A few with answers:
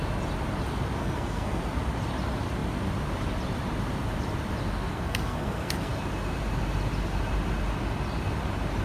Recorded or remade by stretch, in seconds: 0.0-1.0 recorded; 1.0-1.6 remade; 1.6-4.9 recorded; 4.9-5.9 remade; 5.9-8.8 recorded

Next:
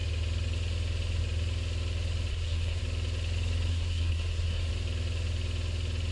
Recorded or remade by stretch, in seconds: 0.0-2.3 recorded; 2.3-2.8 remade; 2.8-3.7 recorded; 3.7-4.7 remade; 4.7-6.1 recorded

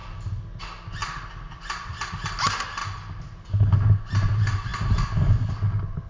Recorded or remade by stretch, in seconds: 0.0-0.6 remade; 0.6-1.0 recorded; 1.0-2.1 remade; 2.1-2.8 recorded; 2.8-3.4 remade; 3.4-6.1 recorded